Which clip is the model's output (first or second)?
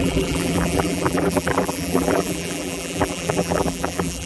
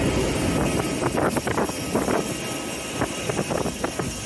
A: first